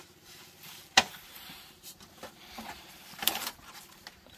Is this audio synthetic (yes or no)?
yes